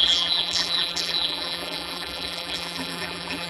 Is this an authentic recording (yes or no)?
no